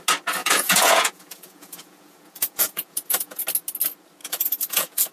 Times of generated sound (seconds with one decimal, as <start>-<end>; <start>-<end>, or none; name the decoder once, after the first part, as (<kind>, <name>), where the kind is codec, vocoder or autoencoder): 0.4-3.4 (vocoder, Vocos); 4.2-5.1